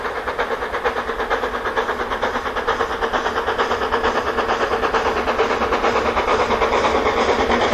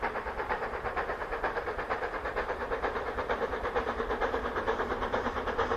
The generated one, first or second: second